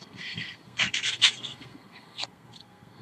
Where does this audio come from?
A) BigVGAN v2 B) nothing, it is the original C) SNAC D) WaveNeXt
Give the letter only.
C